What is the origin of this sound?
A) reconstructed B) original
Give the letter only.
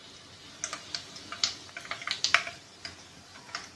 B